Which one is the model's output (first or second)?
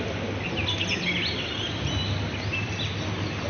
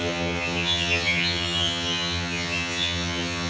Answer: second